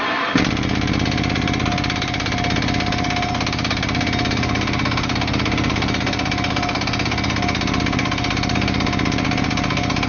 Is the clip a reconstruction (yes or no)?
no